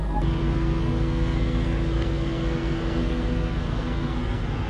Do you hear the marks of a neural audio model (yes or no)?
yes